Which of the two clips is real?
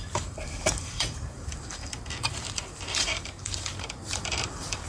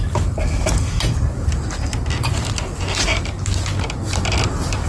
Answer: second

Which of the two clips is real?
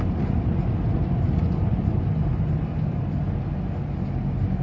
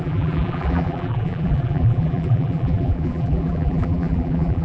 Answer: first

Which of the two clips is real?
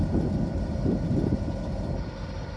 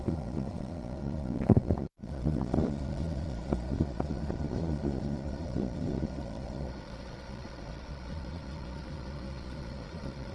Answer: first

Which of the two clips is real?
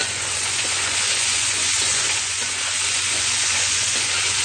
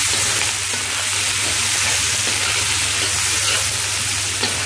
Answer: second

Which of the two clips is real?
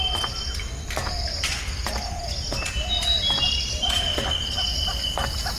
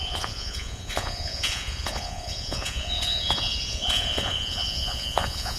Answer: first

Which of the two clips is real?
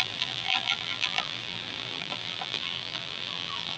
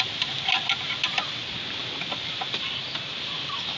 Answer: second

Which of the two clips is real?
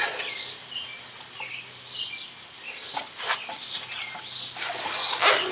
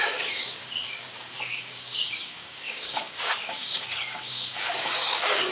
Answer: first